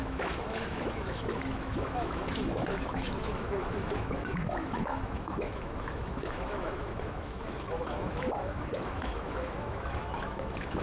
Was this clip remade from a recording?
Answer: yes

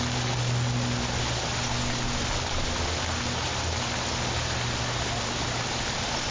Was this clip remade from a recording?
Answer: no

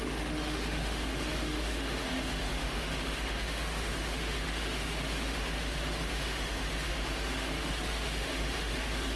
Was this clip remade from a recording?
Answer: yes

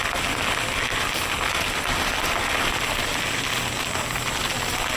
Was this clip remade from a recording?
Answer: no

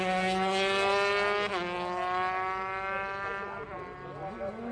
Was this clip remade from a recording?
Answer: no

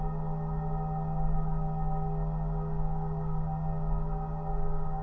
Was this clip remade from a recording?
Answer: no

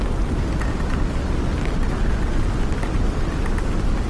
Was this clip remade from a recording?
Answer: no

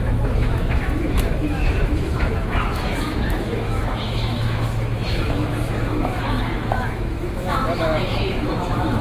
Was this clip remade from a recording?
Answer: yes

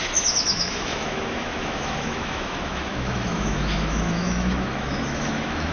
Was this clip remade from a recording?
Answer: yes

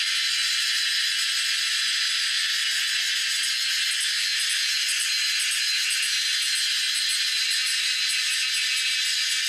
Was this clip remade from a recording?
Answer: no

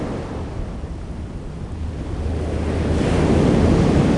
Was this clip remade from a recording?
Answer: no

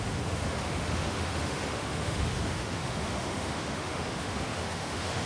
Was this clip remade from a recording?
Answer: yes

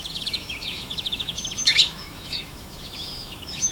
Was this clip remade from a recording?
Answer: yes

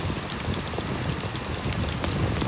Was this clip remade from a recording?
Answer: no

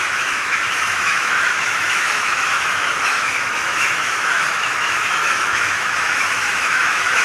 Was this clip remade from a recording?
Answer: yes